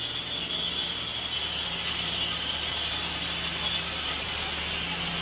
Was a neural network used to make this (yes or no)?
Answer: no